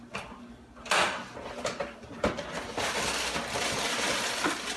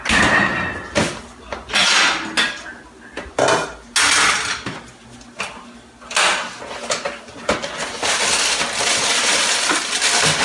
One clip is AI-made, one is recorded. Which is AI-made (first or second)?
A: first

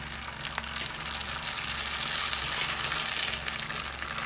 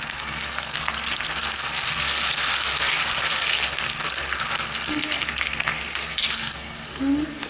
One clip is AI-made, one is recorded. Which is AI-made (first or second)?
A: second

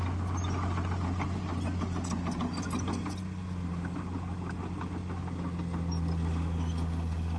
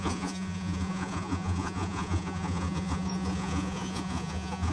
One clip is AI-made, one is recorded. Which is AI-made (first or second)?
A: second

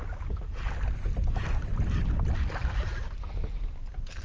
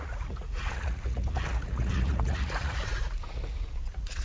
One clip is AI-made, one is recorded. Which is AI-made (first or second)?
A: second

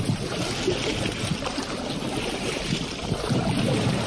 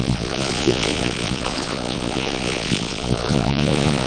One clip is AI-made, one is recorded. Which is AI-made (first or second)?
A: second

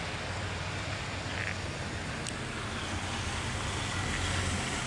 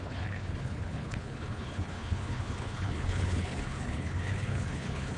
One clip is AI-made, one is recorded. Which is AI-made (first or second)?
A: second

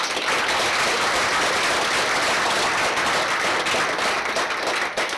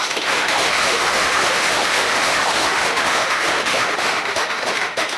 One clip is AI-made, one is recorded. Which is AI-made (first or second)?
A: second